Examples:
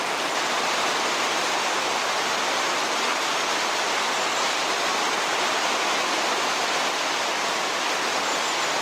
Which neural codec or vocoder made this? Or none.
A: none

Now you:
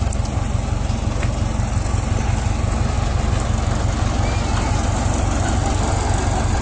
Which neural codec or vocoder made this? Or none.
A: none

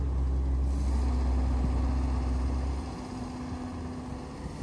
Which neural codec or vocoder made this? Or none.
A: none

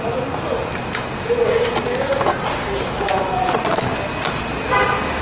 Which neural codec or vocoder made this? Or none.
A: none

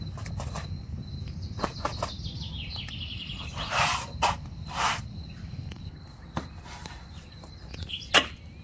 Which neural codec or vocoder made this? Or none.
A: none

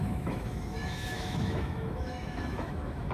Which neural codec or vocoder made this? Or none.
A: autoencoder, DAC-VAE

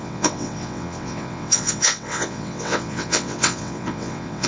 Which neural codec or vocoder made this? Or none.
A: vocoder, WaveNeXt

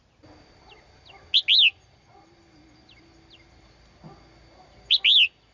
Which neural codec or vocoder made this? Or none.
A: none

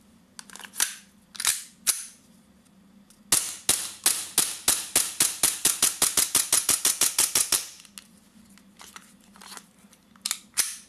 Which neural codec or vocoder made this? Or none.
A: none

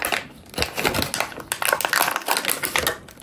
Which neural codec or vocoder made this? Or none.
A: none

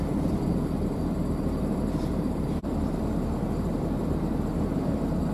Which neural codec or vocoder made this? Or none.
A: vocoder, BigVGAN v2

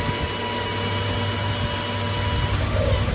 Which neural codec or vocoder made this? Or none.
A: none